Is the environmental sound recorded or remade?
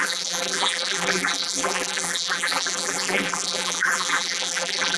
remade